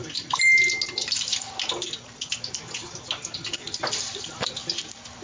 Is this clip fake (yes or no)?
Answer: no